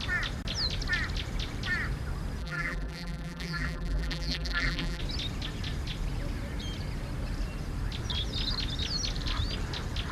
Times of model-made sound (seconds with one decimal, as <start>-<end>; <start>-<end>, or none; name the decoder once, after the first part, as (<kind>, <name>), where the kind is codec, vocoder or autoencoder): 2.4-5.0 (vocoder, BigVGAN v2)